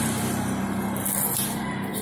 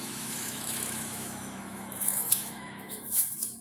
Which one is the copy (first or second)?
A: second